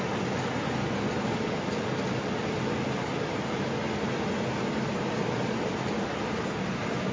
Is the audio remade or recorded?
recorded